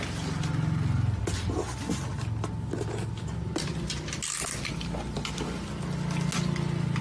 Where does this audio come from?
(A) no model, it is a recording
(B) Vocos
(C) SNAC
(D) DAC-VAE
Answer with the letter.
A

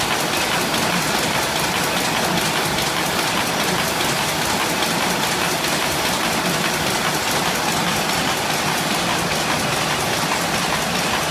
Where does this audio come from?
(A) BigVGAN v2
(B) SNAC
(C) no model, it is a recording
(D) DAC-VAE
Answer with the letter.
C